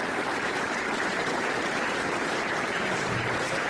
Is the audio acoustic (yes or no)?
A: no